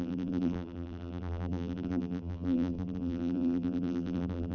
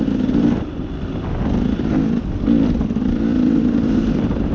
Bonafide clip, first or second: second